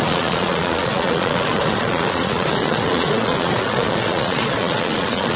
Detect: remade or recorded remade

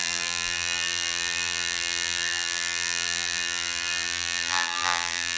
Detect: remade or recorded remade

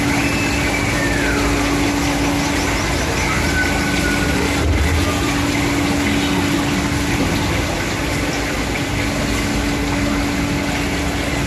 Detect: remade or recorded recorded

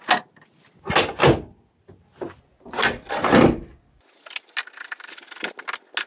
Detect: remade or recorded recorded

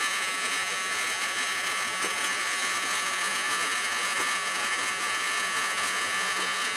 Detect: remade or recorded remade